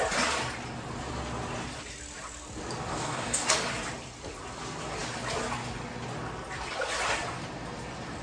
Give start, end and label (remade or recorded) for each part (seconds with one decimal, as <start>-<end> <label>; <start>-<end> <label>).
0.0-2.9 recorded; 2.9-3.5 remade; 3.5-8.2 recorded

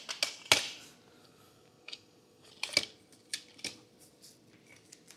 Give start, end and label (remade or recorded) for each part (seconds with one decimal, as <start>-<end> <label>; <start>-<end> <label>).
0.0-1.2 recorded; 1.2-2.5 remade; 2.5-5.2 recorded